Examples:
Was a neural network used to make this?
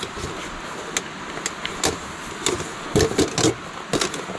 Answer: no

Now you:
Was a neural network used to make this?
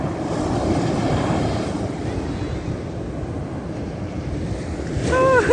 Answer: no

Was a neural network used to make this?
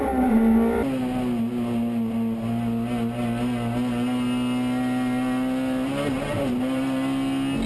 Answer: no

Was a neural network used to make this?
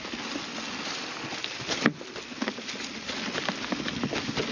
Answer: no